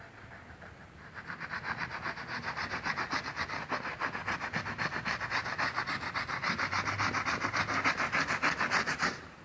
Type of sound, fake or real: real